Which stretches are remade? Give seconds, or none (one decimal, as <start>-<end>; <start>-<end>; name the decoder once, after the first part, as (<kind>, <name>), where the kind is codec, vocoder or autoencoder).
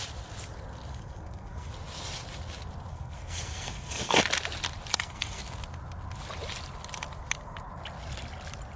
0.9-1.7 (codec, SNAC); 2.9-4.2; 4.9-5.4